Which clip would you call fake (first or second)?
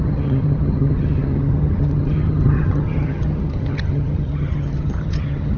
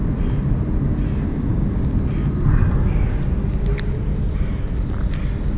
first